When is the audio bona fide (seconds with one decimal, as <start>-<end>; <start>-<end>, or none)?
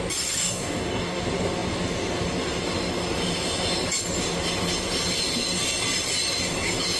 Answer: 0.0-0.4; 1.2-7.0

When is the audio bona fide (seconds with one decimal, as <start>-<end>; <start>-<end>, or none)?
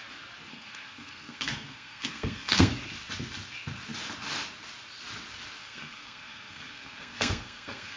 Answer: 0.0-0.5; 2.7-5.6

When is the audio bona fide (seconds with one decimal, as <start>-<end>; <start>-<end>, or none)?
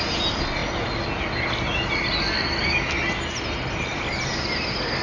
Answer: 0.0-5.0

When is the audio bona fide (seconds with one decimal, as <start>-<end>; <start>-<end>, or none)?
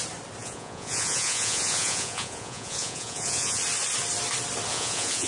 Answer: 0.0-0.4; 3.6-4.7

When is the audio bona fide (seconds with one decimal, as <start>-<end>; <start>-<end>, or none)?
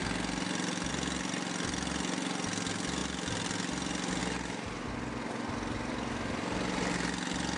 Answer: 0.0-7.6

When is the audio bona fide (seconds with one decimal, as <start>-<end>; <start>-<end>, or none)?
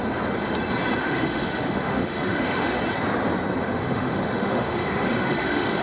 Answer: 0.0-1.0; 2.8-3.6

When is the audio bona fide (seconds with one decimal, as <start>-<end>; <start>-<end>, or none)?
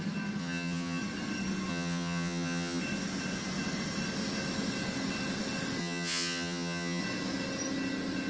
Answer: 0.0-0.4; 1.0-1.7; 2.8-5.8; 7.0-8.3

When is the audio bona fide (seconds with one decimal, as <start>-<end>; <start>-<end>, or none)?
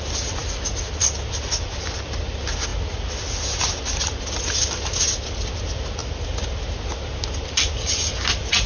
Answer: 0.0-8.7